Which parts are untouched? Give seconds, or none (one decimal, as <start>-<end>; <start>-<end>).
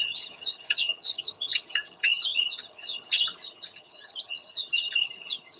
none